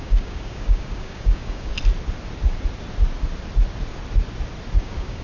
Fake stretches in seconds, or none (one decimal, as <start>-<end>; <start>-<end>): 0.0-1.7; 4.8-5.2